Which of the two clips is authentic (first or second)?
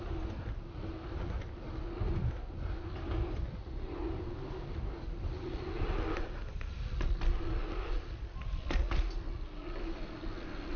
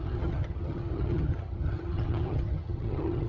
first